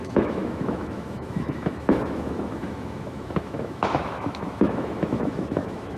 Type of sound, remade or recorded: remade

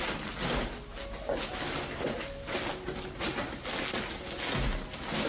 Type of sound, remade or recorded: recorded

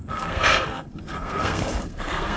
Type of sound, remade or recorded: remade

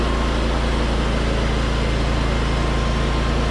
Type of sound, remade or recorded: recorded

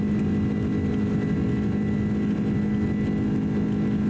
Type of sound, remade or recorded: recorded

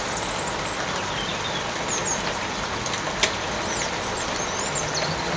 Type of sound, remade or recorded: recorded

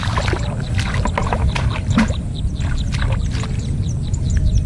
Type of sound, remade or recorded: recorded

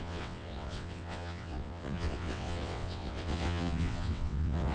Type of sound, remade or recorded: remade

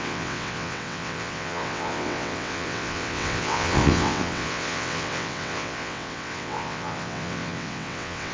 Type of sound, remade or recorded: remade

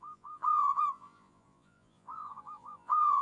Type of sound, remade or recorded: remade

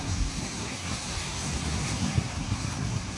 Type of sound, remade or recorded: remade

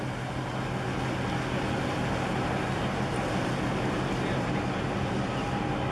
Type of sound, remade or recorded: recorded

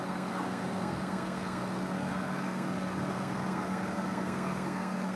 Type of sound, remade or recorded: remade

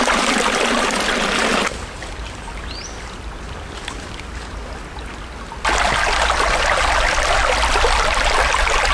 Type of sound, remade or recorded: recorded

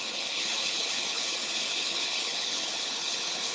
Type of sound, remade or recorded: remade